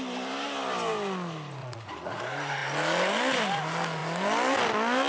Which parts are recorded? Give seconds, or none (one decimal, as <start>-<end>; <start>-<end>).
0.0-1.6; 2.2-5.1